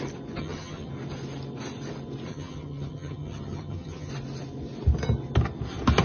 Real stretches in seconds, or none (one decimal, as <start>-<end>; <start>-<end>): 0.0-0.4; 0.9-2.3; 4.1-6.0